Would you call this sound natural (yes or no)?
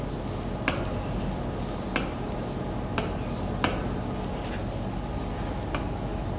yes